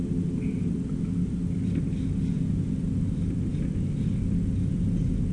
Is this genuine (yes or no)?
yes